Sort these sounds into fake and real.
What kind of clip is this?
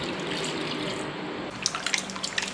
real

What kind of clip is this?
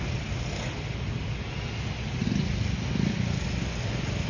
real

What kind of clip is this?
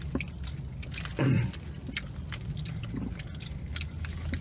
real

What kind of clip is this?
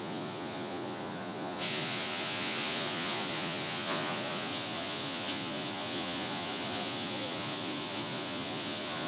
fake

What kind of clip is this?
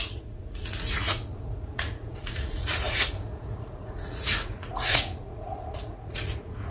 fake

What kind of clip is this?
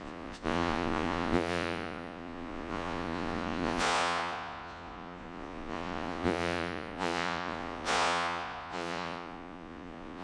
fake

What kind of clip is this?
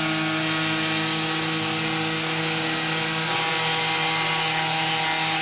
real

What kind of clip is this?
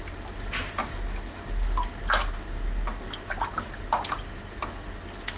real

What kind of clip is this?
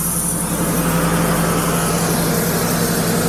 real